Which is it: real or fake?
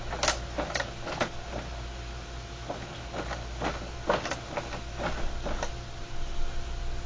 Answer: real